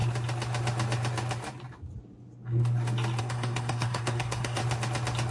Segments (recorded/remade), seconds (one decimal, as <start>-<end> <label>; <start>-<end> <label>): 0.0-3.2 recorded; 3.2-4.6 remade; 4.6-5.3 recorded